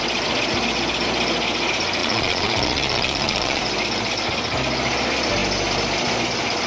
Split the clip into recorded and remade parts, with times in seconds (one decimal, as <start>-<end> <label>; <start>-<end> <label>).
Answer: 0.0-2.0 recorded; 2.0-3.6 remade; 3.6-6.7 recorded